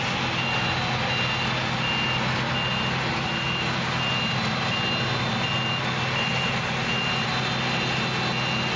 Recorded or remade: recorded